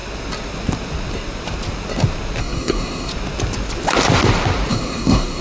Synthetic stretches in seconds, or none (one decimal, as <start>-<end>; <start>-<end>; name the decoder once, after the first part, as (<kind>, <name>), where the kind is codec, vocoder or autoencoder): 2.4-3.1 (codec, SNAC); 4.7-5.4